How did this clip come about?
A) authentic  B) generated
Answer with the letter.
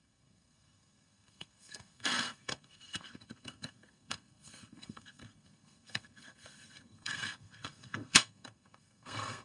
B